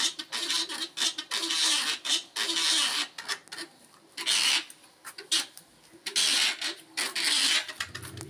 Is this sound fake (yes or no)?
no